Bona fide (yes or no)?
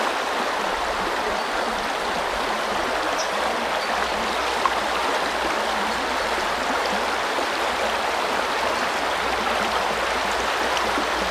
yes